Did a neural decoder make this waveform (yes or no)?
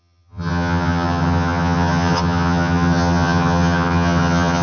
yes